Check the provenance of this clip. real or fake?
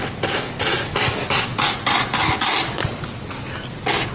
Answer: real